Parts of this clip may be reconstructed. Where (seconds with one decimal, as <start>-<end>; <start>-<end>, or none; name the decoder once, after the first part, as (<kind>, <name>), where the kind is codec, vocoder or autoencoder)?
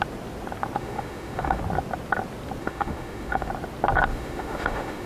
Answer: 0.8-1.6 (autoencoder, DAC-VAE); 2.6-3.5; 4.1-5.1